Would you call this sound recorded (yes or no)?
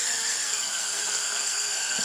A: no